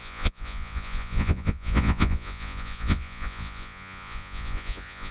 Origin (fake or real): fake